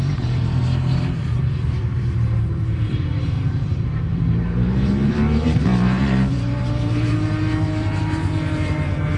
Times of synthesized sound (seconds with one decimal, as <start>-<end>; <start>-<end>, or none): 0.0-9.2